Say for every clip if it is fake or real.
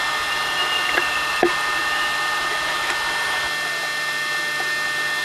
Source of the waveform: real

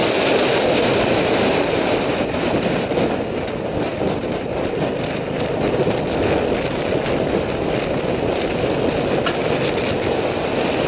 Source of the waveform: real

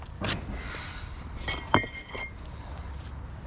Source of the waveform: real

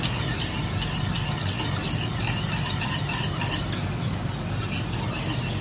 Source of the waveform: real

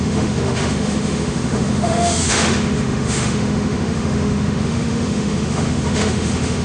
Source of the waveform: fake